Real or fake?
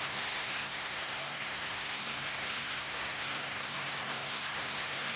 fake